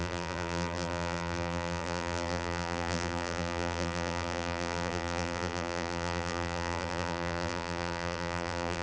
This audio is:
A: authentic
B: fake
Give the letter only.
B